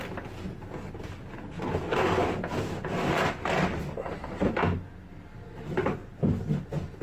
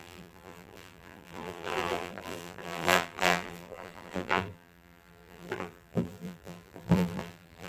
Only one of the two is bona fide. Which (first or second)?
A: first